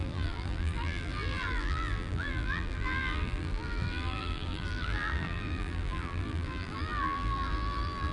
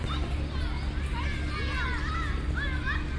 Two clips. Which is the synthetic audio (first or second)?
first